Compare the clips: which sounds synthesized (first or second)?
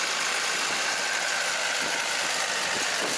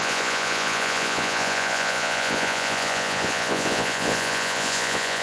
second